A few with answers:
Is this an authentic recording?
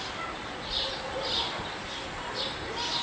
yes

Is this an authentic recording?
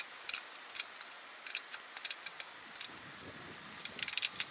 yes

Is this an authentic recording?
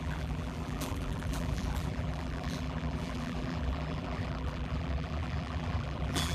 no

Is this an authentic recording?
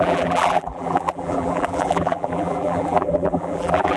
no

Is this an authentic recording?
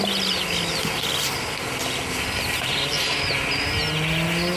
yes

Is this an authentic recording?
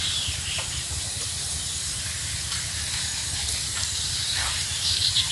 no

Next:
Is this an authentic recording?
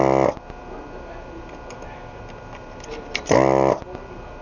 yes